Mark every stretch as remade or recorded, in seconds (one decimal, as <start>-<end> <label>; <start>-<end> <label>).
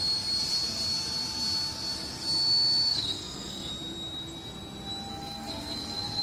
0.0-2.9 recorded; 2.9-3.7 remade; 3.7-5.1 recorded; 5.1-6.2 remade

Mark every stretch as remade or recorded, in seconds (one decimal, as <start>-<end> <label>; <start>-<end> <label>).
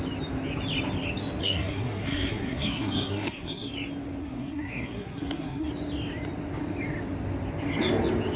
0.0-1.4 recorded; 1.4-3.7 remade; 3.7-4.2 recorded; 4.2-5.7 remade; 5.7-8.4 recorded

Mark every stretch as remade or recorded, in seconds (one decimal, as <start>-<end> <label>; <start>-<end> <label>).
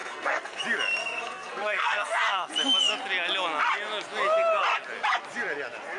0.0-0.6 remade; 0.6-1.0 recorded; 1.0-2.5 remade; 2.5-6.0 recorded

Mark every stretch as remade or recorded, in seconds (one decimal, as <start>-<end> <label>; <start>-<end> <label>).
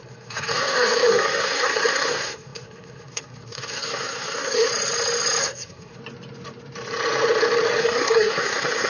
0.0-4.7 remade; 4.7-5.4 recorded; 5.4-6.0 remade; 6.0-7.8 recorded; 7.8-8.9 remade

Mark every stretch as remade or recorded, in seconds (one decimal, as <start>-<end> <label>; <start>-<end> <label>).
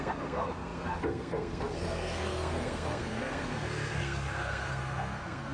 0.0-5.5 remade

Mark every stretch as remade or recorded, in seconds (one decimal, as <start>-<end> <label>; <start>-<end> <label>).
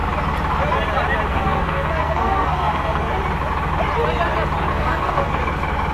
0.0-1.3 recorded; 1.3-3.1 remade; 3.1-4.7 recorded; 4.7-5.4 remade; 5.4-5.9 recorded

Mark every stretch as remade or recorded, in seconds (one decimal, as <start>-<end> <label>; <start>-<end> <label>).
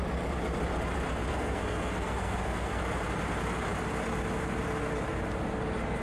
0.0-1.3 recorded; 1.3-2.8 remade; 2.8-6.0 recorded